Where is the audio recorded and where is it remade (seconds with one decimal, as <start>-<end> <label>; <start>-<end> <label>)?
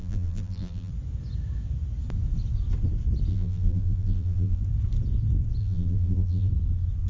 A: 0.0-0.9 remade; 0.9-3.3 recorded; 3.3-4.6 remade; 4.6-5.6 recorded; 5.6-6.5 remade; 6.5-7.1 recorded